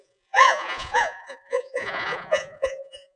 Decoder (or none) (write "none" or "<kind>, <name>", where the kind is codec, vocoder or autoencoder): vocoder, Vocos